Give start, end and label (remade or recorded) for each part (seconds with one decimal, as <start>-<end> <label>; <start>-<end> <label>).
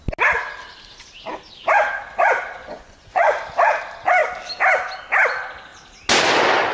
0.0-2.6 recorded; 2.6-3.4 remade; 3.4-6.7 recorded